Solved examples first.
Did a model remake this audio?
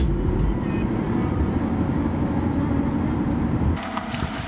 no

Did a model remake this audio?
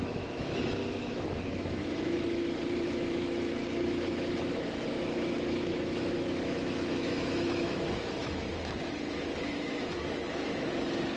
yes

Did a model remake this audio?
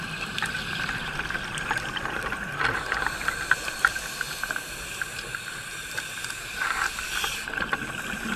no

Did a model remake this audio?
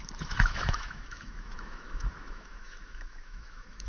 yes